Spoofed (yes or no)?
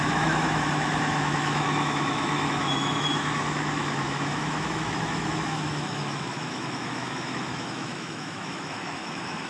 yes